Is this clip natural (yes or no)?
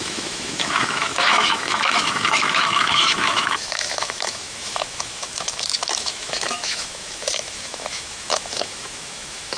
no